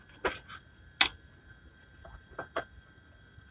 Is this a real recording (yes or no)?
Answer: yes